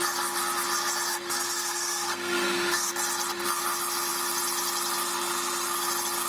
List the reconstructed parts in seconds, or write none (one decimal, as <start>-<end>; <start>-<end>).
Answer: 1.1-2.9